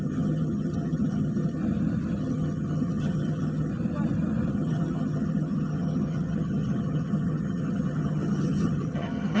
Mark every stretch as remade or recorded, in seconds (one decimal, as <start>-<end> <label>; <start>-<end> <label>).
0.0-1.6 remade; 1.6-2.2 recorded; 2.2-3.7 remade; 3.7-4.5 recorded; 4.5-9.4 remade